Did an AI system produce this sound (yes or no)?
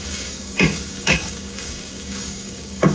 yes